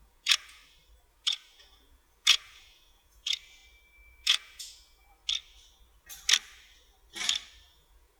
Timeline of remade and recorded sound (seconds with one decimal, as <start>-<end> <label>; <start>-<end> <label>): 0.0-0.6 remade; 0.6-1.1 recorded; 1.1-3.6 remade; 3.6-4.1 recorded; 4.1-5.2 remade; 5.2-7.6 recorded; 7.6-8.2 remade